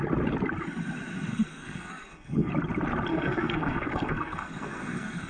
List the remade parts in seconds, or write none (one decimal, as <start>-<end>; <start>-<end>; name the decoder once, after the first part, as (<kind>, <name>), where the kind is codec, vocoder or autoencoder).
1.3-2.5 (codec, SNAC); 3.1-5.3